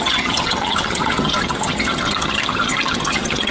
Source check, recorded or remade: remade